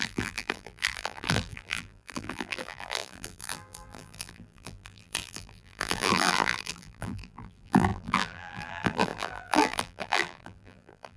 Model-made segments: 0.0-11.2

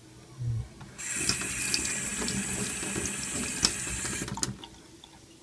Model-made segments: none

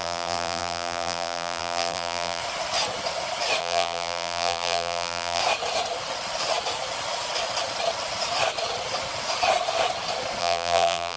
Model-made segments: 0.0-2.4; 3.6-5.4; 10.4-11.2

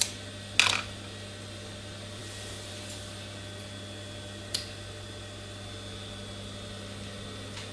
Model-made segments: none